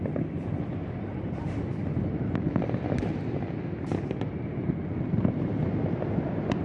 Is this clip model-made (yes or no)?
no